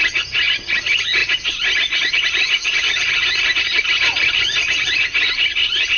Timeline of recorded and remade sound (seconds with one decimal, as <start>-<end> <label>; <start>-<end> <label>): 0.0-1.2 remade; 1.2-2.1 recorded; 2.1-6.0 remade